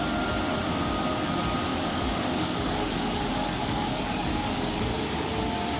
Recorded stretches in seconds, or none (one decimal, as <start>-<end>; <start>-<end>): 0.0-1.7; 3.2-3.6; 5.3-5.8